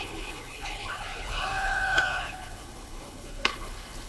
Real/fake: fake